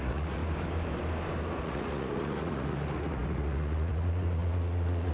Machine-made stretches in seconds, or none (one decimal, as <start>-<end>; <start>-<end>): 0.0-0.4; 1.6-5.1